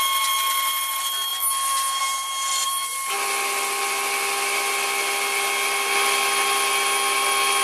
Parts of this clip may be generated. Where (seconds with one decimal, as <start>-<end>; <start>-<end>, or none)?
none